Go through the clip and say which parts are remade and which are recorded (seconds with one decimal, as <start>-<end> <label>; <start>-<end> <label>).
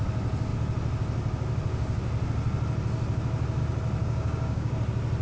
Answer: 0.0-4.0 recorded; 4.0-4.7 remade; 4.7-5.2 recorded